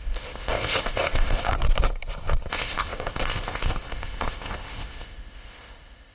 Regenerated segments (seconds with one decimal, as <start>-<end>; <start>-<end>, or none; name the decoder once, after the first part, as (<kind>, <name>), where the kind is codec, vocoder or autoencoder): 0.0-1.5 (codec, ZipCodec); 2.5-6.1